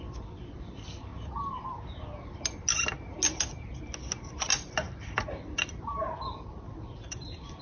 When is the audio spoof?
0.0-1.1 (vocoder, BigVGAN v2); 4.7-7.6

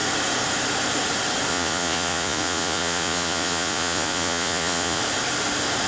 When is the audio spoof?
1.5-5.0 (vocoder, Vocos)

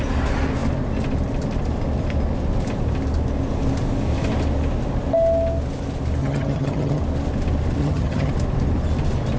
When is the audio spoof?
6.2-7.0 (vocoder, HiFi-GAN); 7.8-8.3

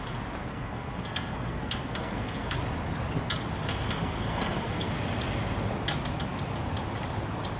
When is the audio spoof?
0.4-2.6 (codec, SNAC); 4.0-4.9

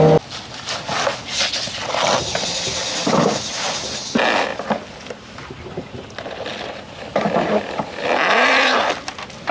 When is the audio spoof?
none

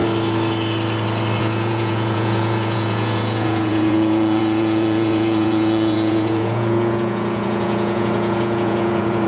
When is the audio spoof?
1.4-9.3 (vocoder, Vocos)

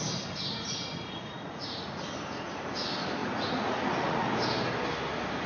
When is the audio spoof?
0.5-2.0 (vocoder, Vocos); 3.2-4.3